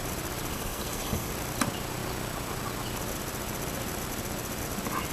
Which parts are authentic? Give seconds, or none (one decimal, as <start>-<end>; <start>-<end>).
0.0-0.5; 1.3-5.1